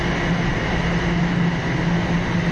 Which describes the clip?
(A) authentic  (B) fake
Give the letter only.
A